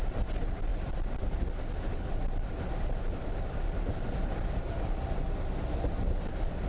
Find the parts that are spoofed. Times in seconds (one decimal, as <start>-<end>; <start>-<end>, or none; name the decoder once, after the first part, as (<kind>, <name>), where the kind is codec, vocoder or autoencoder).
none